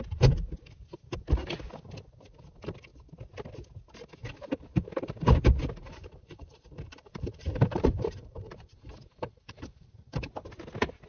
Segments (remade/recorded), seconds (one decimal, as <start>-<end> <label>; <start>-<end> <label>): 0.0-5.8 recorded; 5.8-10.3 remade; 10.3-11.1 recorded